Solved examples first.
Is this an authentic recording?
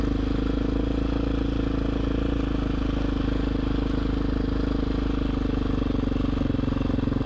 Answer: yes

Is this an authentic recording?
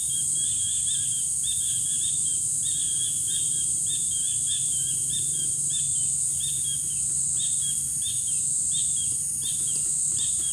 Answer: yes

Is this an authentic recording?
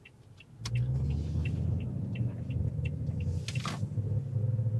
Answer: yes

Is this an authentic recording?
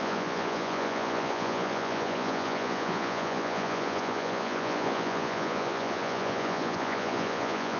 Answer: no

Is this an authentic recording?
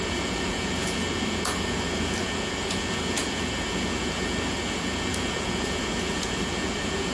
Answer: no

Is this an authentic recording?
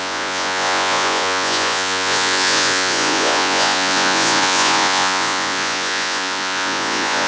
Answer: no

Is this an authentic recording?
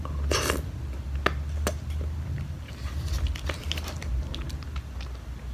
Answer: yes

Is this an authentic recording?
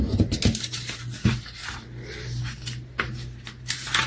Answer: yes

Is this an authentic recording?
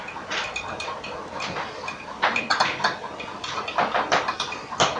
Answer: yes